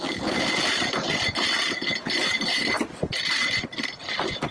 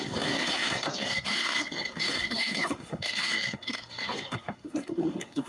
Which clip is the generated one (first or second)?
second